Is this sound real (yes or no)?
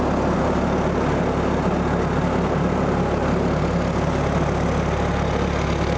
yes